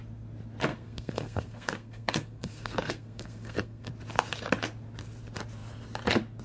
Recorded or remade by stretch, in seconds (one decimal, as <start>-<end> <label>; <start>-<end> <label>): 0.0-0.7 recorded; 0.7-3.9 remade; 3.9-6.4 recorded

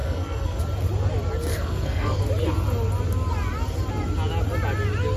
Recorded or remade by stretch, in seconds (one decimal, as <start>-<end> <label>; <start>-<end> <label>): 0.0-0.6 remade; 0.6-1.5 recorded; 1.5-2.2 remade; 2.2-5.2 recorded

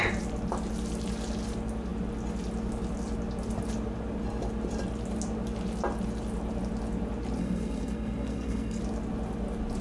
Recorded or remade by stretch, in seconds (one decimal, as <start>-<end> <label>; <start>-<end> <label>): 0.0-7.4 recorded; 7.4-8.8 remade; 8.8-9.8 recorded

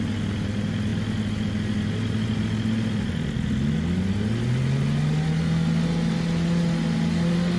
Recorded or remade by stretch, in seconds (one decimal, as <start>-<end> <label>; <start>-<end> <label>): 0.0-7.6 recorded

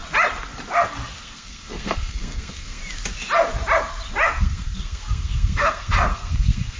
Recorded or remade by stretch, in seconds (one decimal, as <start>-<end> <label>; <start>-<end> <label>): 0.0-1.2 recorded; 1.2-2.8 remade; 2.8-4.4 recorded; 4.4-6.8 remade